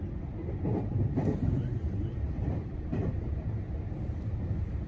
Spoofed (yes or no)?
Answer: yes